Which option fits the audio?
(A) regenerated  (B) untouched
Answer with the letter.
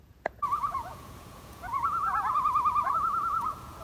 A